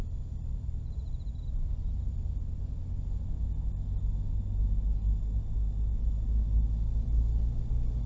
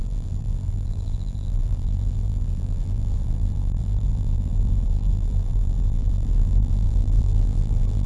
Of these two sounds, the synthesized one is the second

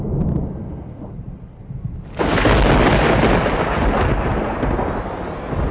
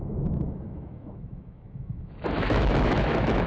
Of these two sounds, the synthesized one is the second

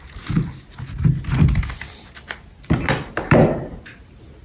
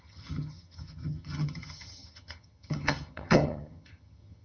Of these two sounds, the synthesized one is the second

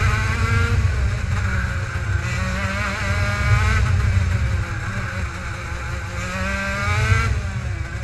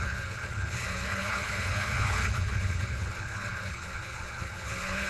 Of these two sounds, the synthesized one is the second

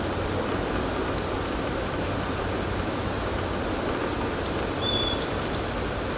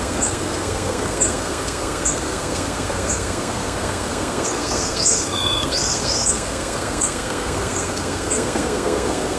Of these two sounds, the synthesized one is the second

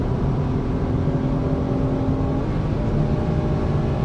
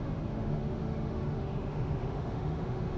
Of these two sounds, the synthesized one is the second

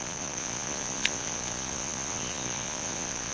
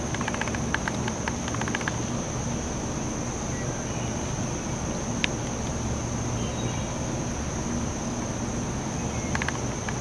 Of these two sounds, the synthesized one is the first